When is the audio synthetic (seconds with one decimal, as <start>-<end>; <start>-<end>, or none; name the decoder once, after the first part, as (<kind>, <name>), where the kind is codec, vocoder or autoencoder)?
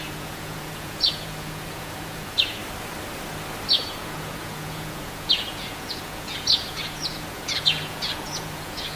0.0-2.6 (vocoder, Vocos); 3.7-9.0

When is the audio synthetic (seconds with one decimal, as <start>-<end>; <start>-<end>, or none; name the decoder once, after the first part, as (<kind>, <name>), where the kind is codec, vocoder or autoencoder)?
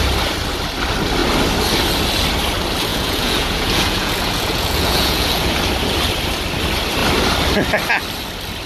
2.9-5.5 (vocoder, Vocos)